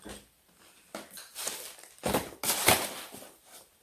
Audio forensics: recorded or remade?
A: recorded